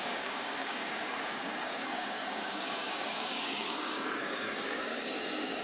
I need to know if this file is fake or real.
fake